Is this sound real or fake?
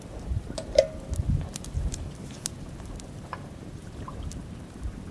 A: fake